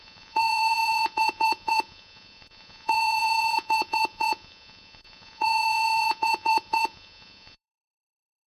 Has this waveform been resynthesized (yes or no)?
yes